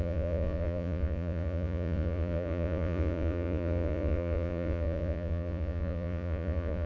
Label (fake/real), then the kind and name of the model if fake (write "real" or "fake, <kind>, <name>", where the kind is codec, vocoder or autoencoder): fake, vocoder, Vocos